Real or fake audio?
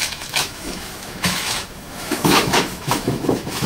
fake